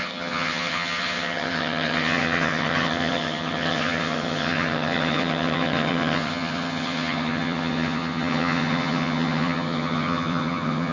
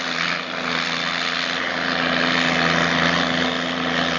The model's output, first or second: first